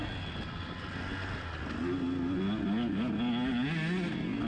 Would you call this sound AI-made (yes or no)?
no